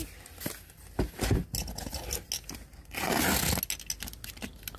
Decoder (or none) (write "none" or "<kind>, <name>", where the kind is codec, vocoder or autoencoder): none